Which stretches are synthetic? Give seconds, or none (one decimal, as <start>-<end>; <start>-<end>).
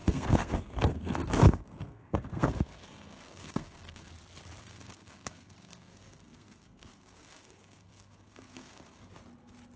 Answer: 0.0-4.1; 4.6-9.1